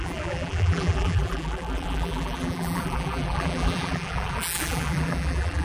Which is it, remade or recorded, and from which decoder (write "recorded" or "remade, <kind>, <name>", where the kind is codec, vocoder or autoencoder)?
remade, vocoder, BigVGAN v2